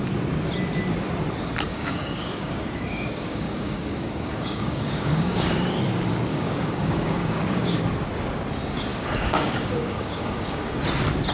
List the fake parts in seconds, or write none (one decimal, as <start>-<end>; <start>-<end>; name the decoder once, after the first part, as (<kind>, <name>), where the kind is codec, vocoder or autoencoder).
1.7-5.8 (codec, DAC); 6.3-7.8; 8.9-10.8